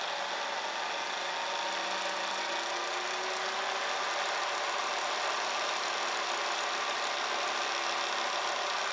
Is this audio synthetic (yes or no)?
no